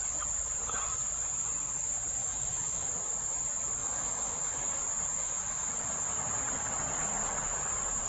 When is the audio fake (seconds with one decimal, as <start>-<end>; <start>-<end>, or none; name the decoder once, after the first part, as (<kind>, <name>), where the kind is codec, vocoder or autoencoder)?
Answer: 2.2-2.9 (autoencoder, DAC-VAE); 3.8-4.7; 5.2-5.7